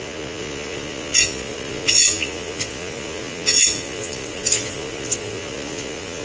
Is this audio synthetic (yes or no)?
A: yes